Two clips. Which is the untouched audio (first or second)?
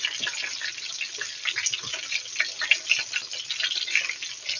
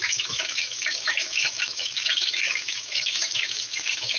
first